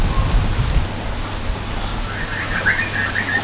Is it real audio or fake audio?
real